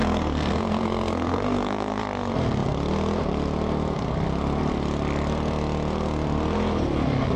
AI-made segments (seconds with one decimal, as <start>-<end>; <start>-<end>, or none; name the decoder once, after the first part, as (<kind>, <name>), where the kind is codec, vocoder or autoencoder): 0.0-2.0 (codec, SNAC)